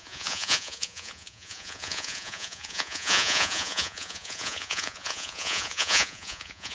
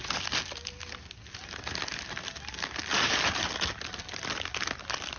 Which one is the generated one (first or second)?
first